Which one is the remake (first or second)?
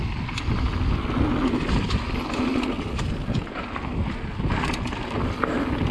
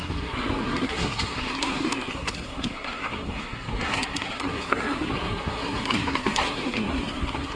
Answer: second